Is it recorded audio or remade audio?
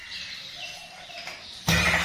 recorded